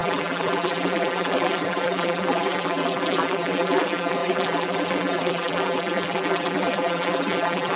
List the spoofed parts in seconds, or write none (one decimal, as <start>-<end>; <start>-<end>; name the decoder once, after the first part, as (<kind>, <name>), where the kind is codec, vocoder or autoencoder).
0.0-7.8 (vocoder, BigVGAN v2)